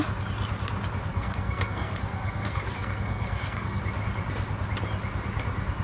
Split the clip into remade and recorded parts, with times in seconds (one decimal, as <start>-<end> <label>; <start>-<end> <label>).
0.0-1.1 recorded; 1.1-3.8 remade; 3.8-5.8 recorded

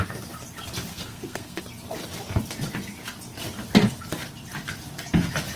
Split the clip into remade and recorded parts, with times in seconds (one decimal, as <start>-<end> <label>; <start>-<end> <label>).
0.0-0.9 recorded; 0.9-1.6 remade; 1.6-5.6 recorded

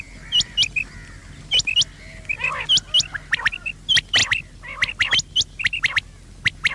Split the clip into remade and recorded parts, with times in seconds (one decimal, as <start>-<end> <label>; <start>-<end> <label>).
0.0-6.7 recorded

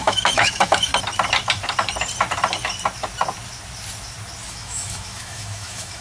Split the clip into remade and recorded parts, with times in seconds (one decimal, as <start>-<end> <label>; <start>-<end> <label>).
0.0-0.9 remade; 0.9-4.5 recorded; 4.5-6.0 remade

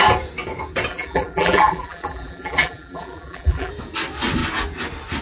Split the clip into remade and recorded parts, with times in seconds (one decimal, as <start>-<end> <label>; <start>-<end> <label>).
0.0-0.9 recorded; 0.9-3.7 remade; 3.7-5.2 recorded

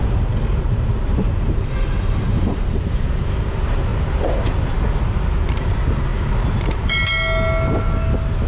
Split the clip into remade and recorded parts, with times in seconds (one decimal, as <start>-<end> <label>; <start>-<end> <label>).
0.0-3.9 remade; 3.9-5.5 recorded; 5.5-6.1 remade; 6.1-8.5 recorded

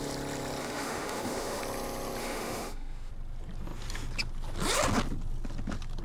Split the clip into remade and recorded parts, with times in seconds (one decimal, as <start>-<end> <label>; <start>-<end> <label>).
0.0-0.6 recorded; 0.6-1.6 remade; 1.6-2.2 recorded; 2.2-3.1 remade; 3.1-6.0 recorded